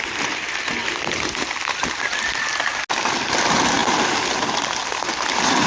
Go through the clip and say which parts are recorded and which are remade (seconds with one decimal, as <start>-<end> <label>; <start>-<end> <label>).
0.0-5.7 recorded